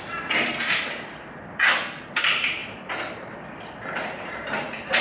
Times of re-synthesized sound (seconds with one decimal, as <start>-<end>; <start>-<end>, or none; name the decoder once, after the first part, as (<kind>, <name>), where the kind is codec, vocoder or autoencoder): none